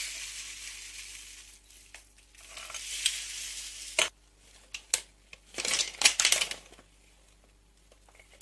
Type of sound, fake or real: real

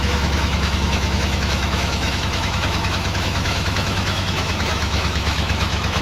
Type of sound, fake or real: fake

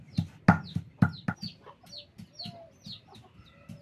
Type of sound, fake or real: real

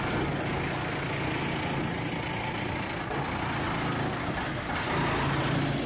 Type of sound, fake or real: real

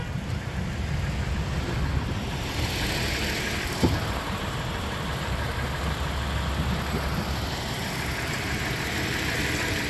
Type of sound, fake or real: real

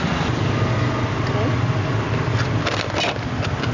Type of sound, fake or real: real